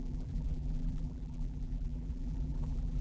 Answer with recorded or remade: remade